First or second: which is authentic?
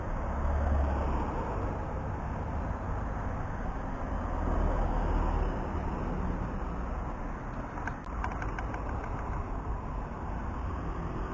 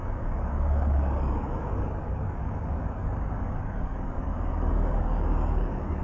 first